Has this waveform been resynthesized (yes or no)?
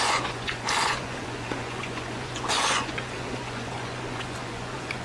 yes